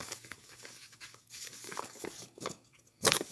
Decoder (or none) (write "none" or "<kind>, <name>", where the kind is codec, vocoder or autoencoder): codec, DAC